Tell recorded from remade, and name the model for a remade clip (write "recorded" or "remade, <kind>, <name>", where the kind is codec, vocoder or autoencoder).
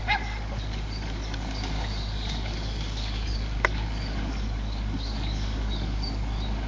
remade, codec, DAC